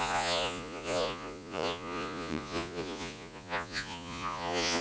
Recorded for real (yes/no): no